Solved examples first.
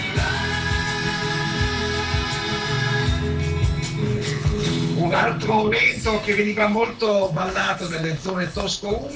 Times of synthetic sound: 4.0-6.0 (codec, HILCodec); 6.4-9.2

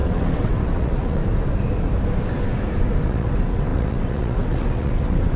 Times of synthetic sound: 0.0-1.2 (vocoder, WaveNeXt); 3.0-5.4

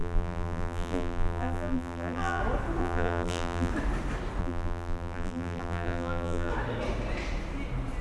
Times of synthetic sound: 0.0-2.4 (vocoder, BigVGAN v2); 2.8-3.7; 4.4-6.5

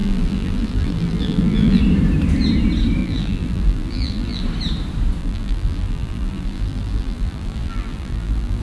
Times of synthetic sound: 0.0-1.8 (vocoder, BigVGAN v2); 3.0-4.4; 5.2-8.6

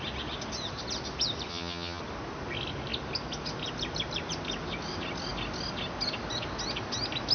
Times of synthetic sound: 1.5-2.0 (vocoder, HiFi-GAN)

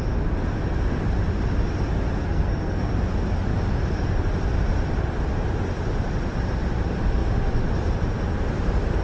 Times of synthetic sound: 2.2-2.9 (codec, SNAC)

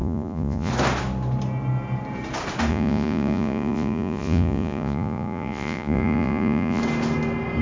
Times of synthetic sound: 0.0-0.7 (vocoder, Vocos); 2.7-6.8